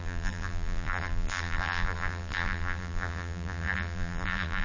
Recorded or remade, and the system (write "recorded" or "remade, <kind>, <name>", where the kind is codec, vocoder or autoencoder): remade, vocoder, BigVGAN v2